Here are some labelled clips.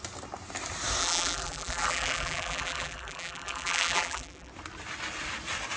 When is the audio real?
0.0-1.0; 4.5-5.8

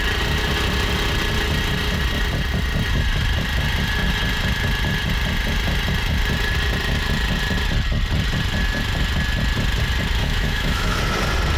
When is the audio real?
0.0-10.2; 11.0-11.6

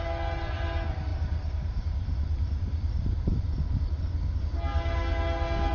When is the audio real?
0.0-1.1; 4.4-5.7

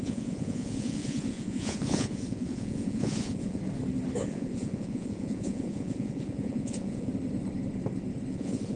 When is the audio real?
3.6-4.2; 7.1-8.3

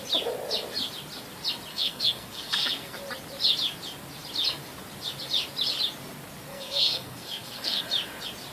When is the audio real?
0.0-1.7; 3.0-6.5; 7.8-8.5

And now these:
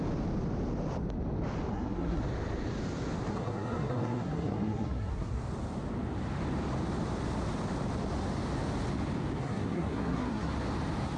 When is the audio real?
0.0-1.7; 2.2-3.3; 5.4-9.4; 10.5-11.2